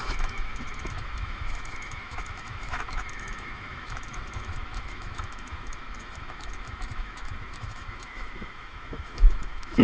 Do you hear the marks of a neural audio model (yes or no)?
yes